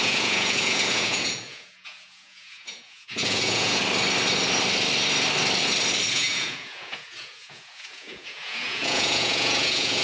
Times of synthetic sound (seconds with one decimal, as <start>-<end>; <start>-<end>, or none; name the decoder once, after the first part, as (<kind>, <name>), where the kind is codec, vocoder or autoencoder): 0.0-3.8 (vocoder, Vocos); 6.1-10.0